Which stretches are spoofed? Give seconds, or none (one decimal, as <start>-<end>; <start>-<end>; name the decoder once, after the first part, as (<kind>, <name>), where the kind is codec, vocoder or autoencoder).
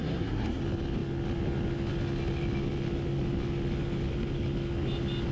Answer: 0.0-0.6 (codec, SNAC)